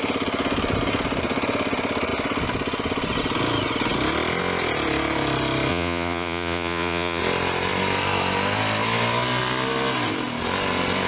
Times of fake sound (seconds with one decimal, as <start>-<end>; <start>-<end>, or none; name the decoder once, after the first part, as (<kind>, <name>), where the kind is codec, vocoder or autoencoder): 5.7-7.2 (vocoder, Vocos)